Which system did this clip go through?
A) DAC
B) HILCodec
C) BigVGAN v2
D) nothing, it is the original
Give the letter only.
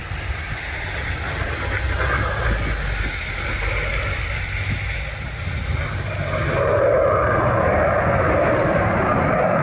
D